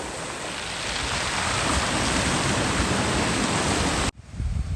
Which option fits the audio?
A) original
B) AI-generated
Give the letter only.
A